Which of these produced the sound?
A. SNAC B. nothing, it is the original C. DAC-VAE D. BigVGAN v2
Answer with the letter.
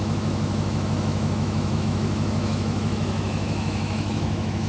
C